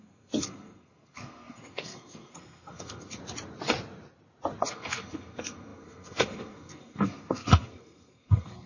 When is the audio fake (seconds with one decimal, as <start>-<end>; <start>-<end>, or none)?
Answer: 0.0-3.2; 4.6-8.7

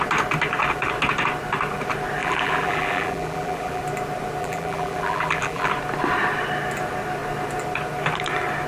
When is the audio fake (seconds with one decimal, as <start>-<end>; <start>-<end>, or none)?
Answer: 2.2-3.8; 4.4-5.7

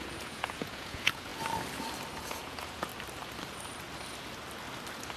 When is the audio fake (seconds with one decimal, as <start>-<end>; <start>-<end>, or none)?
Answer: 0.0-1.3; 2.2-2.9

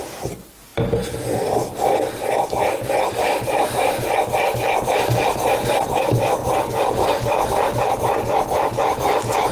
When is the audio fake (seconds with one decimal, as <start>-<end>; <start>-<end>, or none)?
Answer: none